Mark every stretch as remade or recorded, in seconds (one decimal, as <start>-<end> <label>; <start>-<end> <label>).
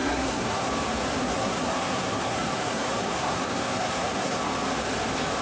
0.0-0.7 remade; 0.7-1.2 recorded; 1.2-4.4 remade; 4.4-5.4 recorded